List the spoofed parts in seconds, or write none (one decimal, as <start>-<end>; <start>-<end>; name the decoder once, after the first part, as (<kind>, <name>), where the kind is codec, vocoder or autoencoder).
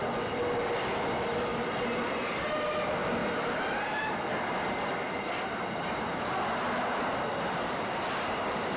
none